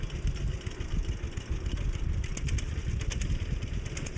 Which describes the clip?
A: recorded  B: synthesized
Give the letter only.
A